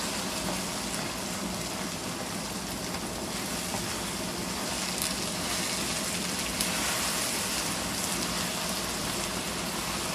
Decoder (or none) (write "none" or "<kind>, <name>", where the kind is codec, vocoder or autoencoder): none